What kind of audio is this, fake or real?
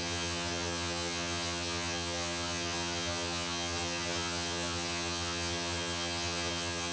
fake